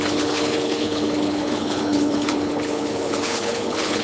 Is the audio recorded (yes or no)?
no